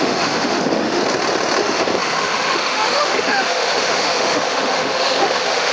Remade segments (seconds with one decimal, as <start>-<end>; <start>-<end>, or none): 0.0-1.0; 1.6-5.7